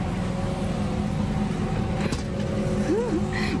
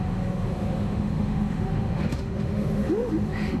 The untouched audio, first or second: first